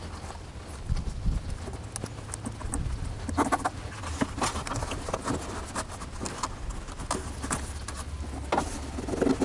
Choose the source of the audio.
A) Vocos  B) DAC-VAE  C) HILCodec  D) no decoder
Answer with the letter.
D